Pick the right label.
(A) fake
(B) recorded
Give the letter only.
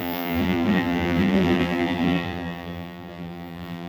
A